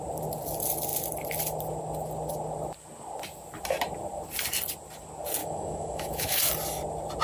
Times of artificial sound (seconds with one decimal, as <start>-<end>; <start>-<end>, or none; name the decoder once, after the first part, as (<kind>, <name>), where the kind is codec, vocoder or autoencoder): 5.4-6.5 (autoencoder, DAC-VAE)